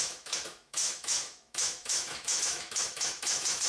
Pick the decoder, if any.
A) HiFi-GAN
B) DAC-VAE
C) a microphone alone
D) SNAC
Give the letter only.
B